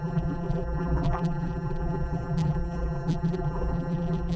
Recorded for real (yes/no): no